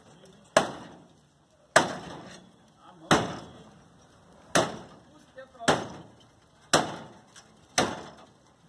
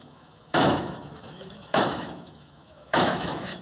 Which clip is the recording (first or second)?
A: first